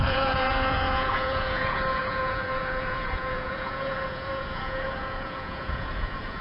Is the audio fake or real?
fake